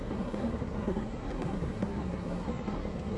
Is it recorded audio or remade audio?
remade